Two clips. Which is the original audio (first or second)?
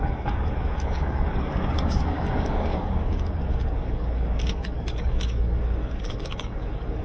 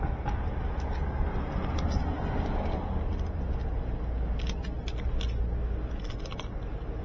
second